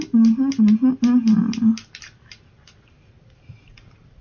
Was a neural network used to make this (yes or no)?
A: no